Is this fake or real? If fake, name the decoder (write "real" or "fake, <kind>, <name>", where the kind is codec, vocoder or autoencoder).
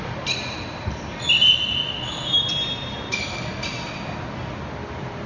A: real